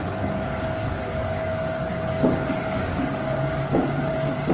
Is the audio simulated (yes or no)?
yes